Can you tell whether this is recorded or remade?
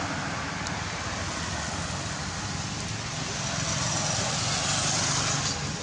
recorded